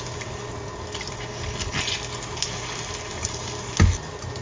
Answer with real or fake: real